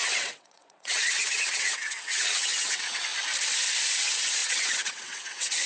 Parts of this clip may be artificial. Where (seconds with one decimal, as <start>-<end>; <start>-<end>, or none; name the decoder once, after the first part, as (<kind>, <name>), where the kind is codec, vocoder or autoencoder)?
0.0-3.1 (vocoder, WaveNeXt); 3.8-5.7